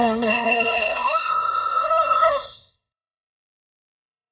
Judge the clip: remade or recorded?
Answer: remade